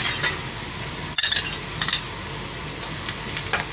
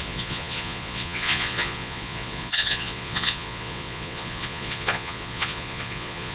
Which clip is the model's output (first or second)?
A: second